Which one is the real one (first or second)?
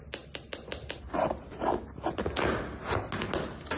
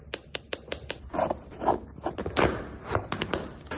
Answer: first